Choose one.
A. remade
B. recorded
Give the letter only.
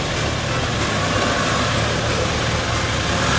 B